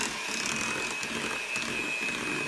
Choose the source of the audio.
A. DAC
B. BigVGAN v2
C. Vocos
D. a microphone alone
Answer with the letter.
D